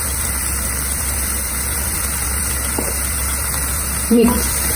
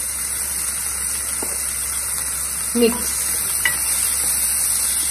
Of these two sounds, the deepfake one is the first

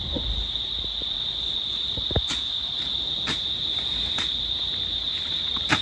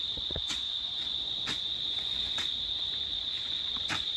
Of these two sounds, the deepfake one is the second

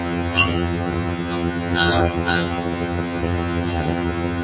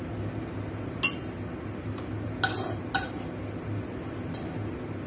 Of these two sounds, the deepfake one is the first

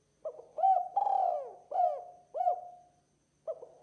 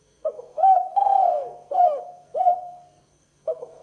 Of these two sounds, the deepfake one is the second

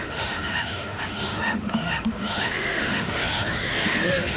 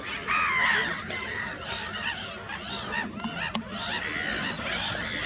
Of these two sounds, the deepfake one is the first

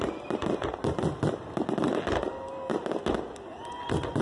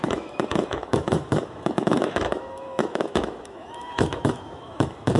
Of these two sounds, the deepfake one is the second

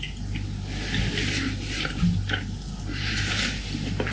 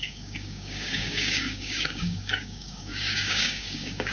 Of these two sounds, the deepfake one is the second